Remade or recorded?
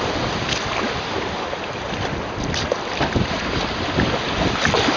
recorded